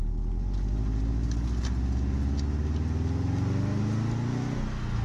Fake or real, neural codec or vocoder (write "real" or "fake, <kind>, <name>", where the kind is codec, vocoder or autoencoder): real